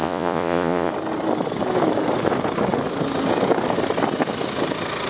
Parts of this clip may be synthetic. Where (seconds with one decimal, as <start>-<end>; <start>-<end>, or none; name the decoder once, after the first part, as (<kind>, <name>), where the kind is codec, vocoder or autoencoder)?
0.0-0.9 (vocoder, Vocos)